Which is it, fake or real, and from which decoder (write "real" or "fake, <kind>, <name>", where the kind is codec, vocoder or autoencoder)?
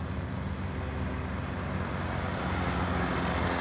real